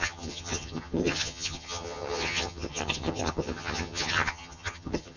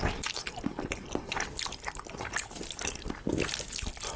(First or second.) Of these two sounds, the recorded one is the second